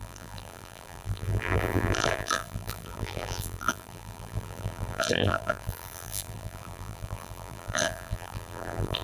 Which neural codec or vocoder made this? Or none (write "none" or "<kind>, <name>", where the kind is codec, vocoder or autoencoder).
vocoder, BigVGAN v2